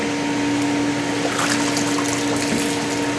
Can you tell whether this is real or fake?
real